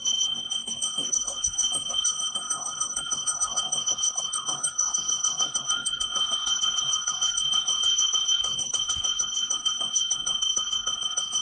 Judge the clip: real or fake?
fake